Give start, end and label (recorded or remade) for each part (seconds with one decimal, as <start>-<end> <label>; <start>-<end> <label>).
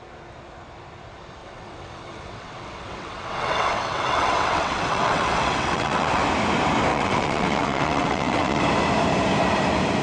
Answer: 0.0-1.4 recorded; 1.4-6.2 remade; 6.2-6.9 recorded; 6.9-8.6 remade; 8.6-10.0 recorded